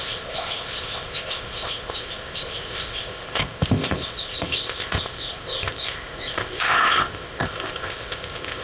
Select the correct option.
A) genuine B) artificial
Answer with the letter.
B